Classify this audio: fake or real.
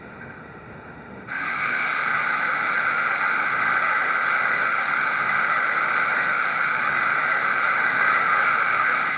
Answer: fake